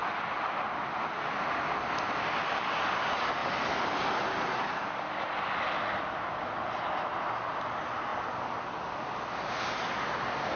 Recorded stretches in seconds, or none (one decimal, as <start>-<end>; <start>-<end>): 0.0-10.6